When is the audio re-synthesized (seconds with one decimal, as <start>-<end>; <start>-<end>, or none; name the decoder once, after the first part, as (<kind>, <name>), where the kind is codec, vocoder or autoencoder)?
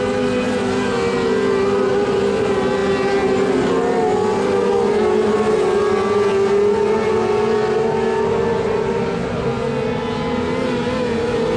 none